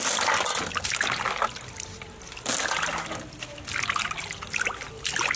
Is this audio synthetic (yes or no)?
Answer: no